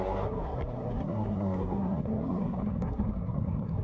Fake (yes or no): yes